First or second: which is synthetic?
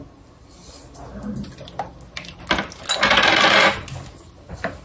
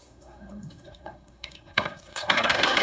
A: second